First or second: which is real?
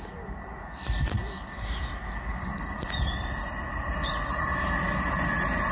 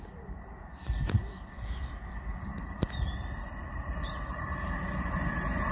first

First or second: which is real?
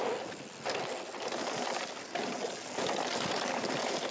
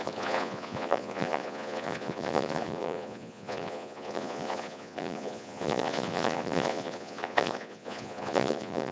first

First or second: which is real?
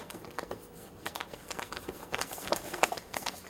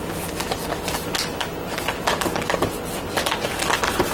second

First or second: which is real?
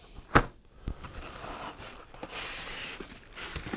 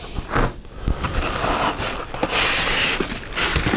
second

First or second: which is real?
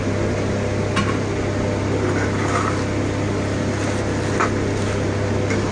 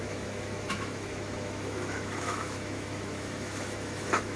first